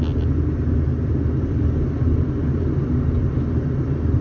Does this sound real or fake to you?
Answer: real